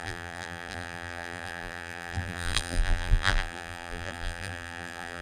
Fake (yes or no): yes